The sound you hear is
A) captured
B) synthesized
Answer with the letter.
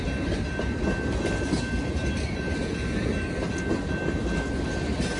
A